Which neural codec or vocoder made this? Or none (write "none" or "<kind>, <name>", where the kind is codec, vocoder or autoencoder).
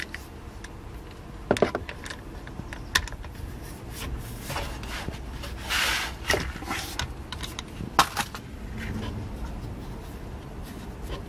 none